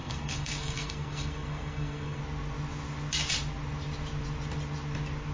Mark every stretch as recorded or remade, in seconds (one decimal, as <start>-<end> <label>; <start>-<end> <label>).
0.0-2.2 remade; 2.2-5.3 recorded